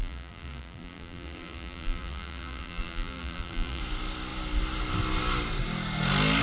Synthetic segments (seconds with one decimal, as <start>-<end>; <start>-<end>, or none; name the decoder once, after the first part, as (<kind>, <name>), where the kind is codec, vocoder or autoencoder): 0.0-3.8 (vocoder, BigVGAN v2)